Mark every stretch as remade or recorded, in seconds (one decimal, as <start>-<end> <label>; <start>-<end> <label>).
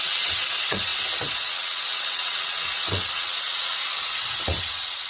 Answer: 0.0-5.1 remade